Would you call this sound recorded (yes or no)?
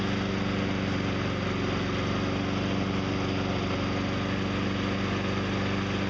yes